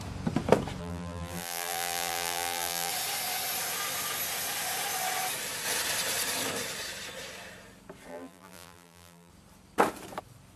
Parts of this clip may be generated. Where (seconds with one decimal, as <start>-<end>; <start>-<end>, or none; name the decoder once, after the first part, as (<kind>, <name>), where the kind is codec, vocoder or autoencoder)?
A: 0.8-2.9 (vocoder, BigVGAN v2); 8.1-9.3